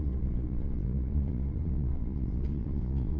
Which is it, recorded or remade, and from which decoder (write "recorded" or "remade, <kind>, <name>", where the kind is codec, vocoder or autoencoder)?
remade, vocoder, Vocos